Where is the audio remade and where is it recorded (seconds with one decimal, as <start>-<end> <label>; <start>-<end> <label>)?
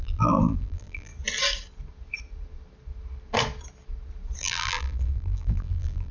0.0-1.1 remade; 1.1-4.4 recorded; 4.4-6.1 remade